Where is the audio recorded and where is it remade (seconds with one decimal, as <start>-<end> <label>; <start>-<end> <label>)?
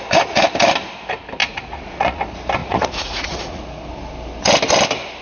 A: 0.0-1.4 recorded; 1.4-2.2 remade; 2.2-2.6 recorded; 2.6-3.6 remade; 3.6-5.2 recorded